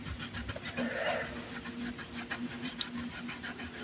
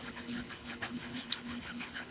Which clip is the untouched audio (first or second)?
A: first